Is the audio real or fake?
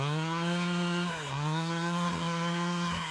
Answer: fake